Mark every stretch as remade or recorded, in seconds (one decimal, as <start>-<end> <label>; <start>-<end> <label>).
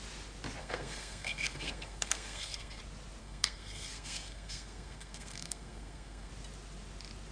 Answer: 0.0-0.6 recorded; 0.6-2.8 remade; 2.8-3.2 recorded; 3.2-6.3 remade; 6.3-7.3 recorded